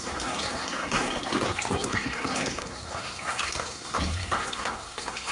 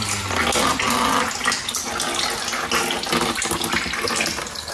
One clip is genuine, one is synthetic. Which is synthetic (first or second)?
first